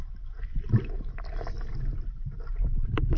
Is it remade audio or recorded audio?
recorded